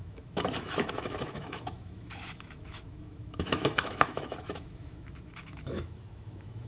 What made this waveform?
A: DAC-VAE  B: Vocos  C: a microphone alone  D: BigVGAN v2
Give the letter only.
A